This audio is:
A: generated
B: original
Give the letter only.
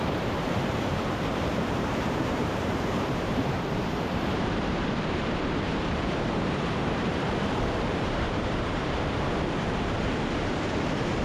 A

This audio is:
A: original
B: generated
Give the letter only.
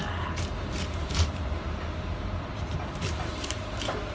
B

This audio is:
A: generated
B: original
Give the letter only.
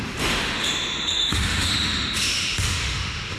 A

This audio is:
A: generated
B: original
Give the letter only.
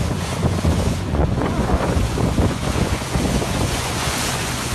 A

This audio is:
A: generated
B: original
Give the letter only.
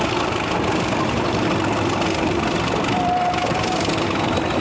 A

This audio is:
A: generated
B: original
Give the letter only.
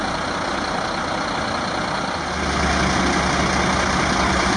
B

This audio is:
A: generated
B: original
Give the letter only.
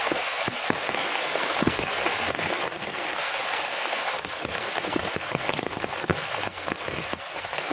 A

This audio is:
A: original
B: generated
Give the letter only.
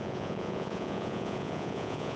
B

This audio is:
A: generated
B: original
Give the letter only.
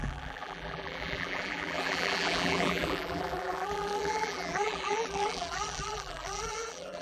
A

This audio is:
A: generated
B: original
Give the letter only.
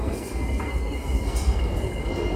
A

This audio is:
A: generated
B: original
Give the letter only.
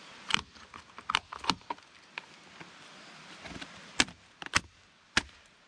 B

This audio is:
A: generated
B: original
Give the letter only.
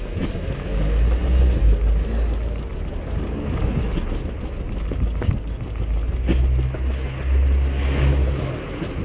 B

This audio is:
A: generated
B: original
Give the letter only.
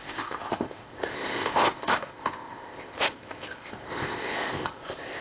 A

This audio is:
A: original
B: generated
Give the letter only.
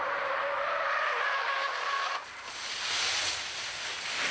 A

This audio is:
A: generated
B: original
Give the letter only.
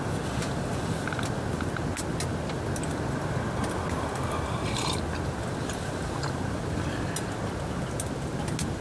B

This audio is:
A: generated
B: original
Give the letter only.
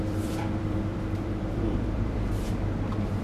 A